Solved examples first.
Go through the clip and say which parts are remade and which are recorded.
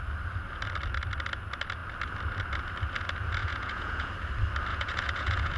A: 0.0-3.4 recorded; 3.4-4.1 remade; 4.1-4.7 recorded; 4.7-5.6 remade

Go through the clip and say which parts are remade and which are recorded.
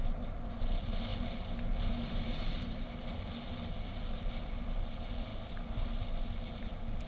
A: 0.0-7.1 recorded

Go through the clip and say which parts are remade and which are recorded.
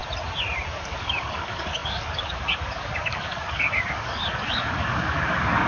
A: 0.0-0.7 recorded; 0.7-5.7 remade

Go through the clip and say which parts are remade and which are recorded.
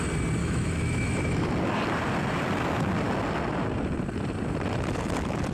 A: 0.0-0.4 recorded; 0.4-1.5 remade; 1.5-5.5 recorded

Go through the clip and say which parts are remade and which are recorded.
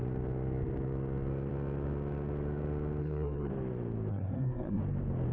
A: 0.0-3.0 recorded; 3.0-3.5 remade; 3.5-4.1 recorded; 4.1-4.8 remade; 4.8-5.3 recorded